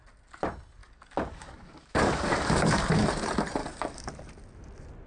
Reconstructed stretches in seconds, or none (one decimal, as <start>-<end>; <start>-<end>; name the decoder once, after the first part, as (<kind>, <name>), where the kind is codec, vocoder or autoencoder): 0.8-3.2 (codec, DAC); 3.6-4.1

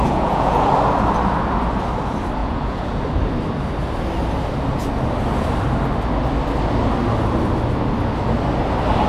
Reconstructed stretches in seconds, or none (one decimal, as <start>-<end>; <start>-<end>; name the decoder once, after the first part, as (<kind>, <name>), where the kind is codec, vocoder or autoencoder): 0.0-0.7 (vocoder, Vocos); 2.4-3.0

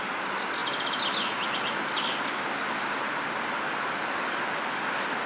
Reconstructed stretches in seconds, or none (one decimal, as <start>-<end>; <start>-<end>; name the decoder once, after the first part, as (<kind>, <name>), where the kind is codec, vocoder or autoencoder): none

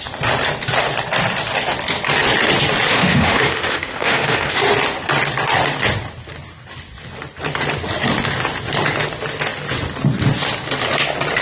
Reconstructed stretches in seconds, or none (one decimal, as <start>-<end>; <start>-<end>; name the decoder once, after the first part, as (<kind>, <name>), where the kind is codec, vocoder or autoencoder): 2.9-4.6 (autoencoder, DAC-VAE)

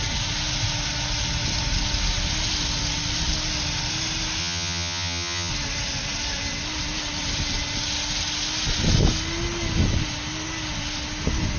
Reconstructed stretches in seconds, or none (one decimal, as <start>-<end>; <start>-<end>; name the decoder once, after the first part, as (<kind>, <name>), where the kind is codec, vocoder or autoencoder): 4.4-5.5 (vocoder, HiFi-GAN)

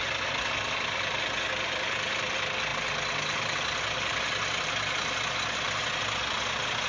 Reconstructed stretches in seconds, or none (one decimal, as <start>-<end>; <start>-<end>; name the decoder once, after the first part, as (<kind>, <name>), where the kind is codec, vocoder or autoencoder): none

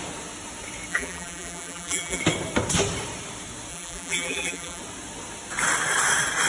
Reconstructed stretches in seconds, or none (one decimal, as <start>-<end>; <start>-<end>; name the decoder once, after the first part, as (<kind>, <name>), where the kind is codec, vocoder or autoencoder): 0.9-2.2 (vocoder, BigVGAN v2); 3.7-4.8